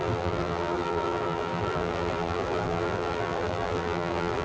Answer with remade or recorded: remade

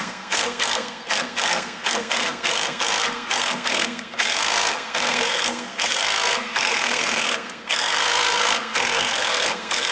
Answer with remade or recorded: remade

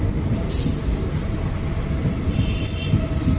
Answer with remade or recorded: recorded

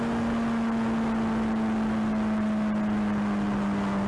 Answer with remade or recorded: recorded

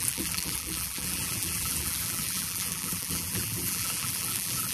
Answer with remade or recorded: remade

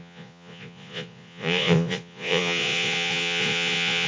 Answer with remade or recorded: remade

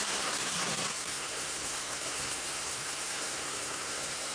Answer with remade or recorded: remade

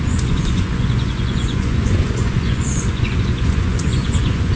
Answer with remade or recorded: remade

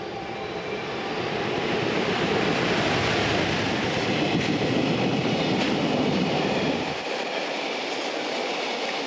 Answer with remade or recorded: remade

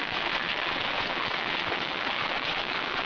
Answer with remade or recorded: remade